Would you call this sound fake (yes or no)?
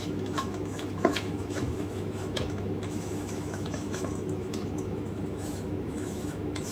yes